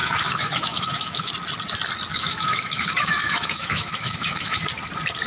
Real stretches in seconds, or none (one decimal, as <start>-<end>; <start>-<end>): 1.3-2.1; 4.6-5.3